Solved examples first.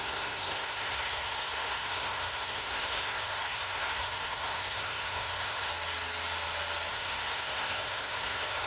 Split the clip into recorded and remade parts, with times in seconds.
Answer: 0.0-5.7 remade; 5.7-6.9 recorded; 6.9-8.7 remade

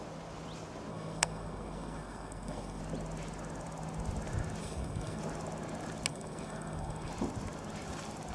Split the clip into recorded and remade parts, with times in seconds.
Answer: 0.0-0.9 recorded; 0.9-2.8 remade; 2.8-4.6 recorded; 4.6-5.2 remade; 5.2-6.1 recorded; 6.1-7.1 remade; 7.1-8.3 recorded

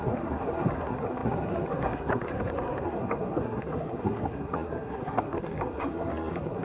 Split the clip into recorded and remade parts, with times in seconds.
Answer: 0.0-6.6 remade

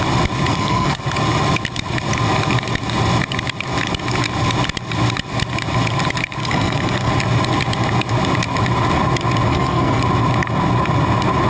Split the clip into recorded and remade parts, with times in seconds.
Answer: 0.0-0.5 recorded; 0.5-1.0 remade; 1.0-6.4 recorded; 6.4-7.1 remade; 7.1-9.5 recorded; 9.5-10.0 remade; 10.0-11.5 recorded

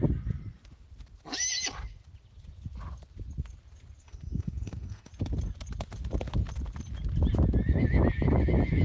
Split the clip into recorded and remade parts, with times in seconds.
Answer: 0.0-4.0 recorded; 4.0-5.1 remade; 5.1-8.8 recorded

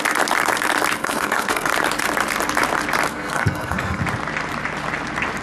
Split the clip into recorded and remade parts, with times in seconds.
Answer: 0.0-1.0 recorded; 1.0-1.7 remade; 1.7-3.1 recorded; 3.1-4.0 remade; 4.0-5.4 recorded